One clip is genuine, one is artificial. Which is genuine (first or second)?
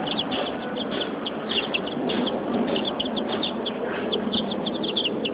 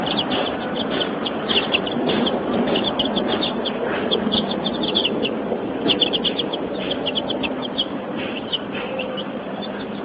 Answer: first